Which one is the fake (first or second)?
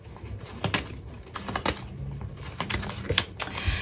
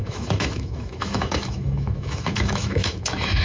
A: second